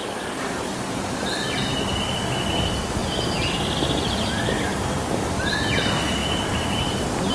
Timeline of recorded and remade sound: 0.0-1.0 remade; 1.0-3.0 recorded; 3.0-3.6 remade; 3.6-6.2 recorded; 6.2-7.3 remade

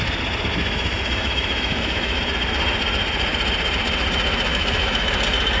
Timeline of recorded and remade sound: 0.0-0.5 recorded; 0.5-2.2 remade; 2.2-4.5 recorded; 4.5-5.1 remade; 5.1-5.6 recorded

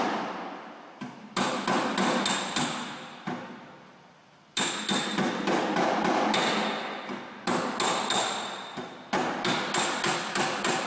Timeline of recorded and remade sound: 0.0-10.9 recorded

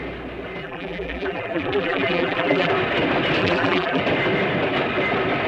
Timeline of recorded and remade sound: 0.0-0.6 recorded; 0.6-2.7 remade; 2.7-3.4 recorded; 3.4-4.0 remade; 4.0-5.5 recorded

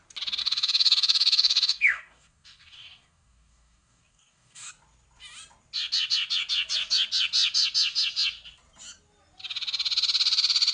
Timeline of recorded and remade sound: 0.0-0.4 recorded; 0.4-4.7 remade; 4.7-10.7 recorded

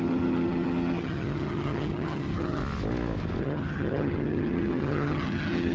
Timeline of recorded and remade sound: 0.0-2.6 remade; 2.6-3.4 recorded; 3.4-5.7 remade

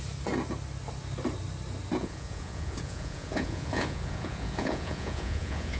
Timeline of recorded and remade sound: 0.0-2.0 recorded; 2.0-5.8 remade